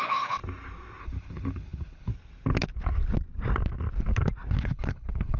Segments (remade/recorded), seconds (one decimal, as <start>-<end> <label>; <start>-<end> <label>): 0.0-0.4 remade; 0.4-1.0 recorded; 1.0-2.1 remade; 2.1-4.5 recorded; 4.5-5.4 remade